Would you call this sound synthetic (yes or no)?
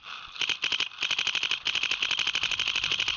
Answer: no